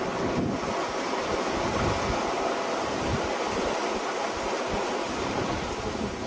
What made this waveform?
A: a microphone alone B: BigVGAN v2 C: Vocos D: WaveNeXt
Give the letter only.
A